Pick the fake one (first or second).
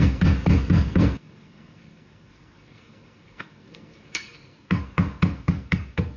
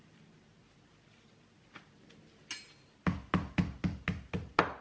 first